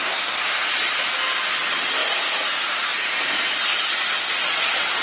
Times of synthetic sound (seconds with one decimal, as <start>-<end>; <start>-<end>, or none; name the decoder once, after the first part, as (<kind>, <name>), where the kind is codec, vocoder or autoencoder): none